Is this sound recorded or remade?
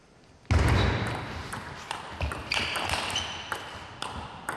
recorded